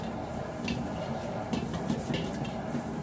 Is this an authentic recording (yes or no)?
yes